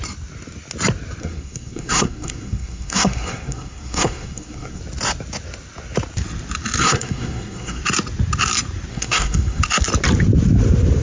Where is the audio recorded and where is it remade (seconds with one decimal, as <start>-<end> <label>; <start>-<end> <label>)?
0.0-1.2 recorded; 1.2-4.8 remade; 4.8-6.8 recorded; 6.8-7.8 remade; 7.8-8.9 recorded; 8.9-9.6 remade; 9.6-11.0 recorded